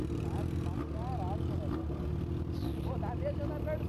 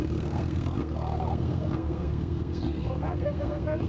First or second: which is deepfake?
second